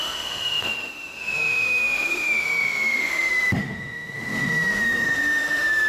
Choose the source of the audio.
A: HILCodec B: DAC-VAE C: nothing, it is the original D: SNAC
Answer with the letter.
B